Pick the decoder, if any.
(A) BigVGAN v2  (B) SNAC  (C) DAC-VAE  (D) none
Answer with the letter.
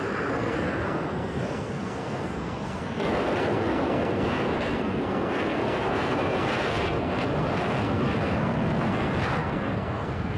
B